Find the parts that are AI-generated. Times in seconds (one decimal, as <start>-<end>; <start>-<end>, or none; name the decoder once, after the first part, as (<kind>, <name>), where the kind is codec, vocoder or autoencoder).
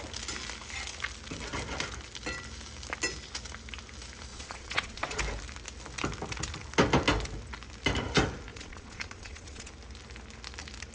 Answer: 4.3-5.2 (vocoder, Vocos); 8.5-9.7